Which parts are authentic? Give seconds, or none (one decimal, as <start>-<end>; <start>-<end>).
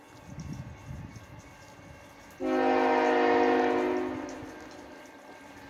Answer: 0.0-5.7